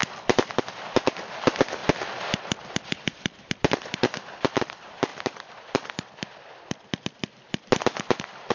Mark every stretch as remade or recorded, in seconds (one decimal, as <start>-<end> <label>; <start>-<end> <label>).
0.0-0.6 recorded; 0.6-1.8 remade; 1.8-2.9 recorded; 2.9-5.1 remade; 5.1-8.5 recorded